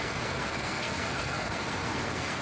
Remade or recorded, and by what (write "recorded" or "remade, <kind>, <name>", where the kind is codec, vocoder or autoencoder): remade, codec, SNAC